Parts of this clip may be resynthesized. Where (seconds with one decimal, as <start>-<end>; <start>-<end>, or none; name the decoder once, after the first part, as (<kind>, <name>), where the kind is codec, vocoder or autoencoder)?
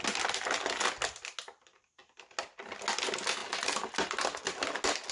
none